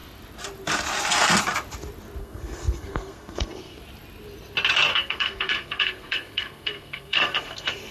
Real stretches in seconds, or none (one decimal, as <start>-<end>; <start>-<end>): 0.0-2.2; 3.8-4.9